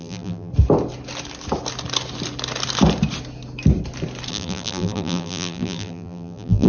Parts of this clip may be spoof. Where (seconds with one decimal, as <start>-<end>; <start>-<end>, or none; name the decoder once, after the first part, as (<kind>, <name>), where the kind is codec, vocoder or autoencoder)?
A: 0.0-0.5 (vocoder, BigVGAN v2); 4.3-6.7